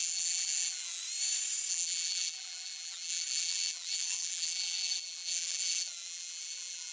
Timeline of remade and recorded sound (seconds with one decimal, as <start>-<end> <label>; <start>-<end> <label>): 0.0-1.0 remade; 1.0-1.7 recorded; 1.7-6.9 remade

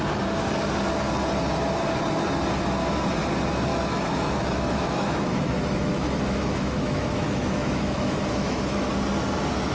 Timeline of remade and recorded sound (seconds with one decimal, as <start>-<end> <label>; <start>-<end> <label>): 0.0-3.7 recorded; 3.7-8.9 remade; 8.9-9.7 recorded

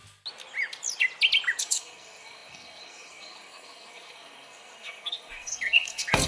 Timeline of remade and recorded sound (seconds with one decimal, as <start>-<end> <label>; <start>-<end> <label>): 0.0-1.6 recorded; 1.6-6.3 remade

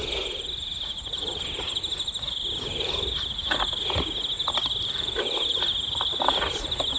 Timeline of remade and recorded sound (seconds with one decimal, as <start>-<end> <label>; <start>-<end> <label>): 0.0-7.0 recorded